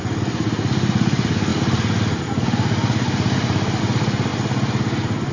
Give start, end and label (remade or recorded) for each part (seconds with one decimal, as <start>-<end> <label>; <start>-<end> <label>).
0.0-5.3 recorded